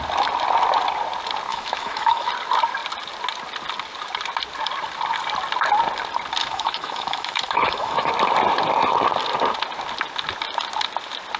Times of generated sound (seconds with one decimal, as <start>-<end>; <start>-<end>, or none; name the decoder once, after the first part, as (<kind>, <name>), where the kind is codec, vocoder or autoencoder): 1.5-2.3 (autoencoder, DAC-VAE); 6.4-8.1